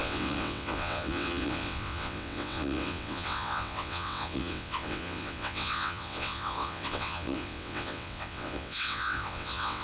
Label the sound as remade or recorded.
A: remade